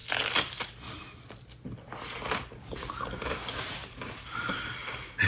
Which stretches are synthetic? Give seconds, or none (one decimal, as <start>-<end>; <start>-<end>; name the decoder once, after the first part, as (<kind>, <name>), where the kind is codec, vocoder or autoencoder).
none